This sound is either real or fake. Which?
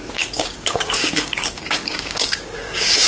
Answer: fake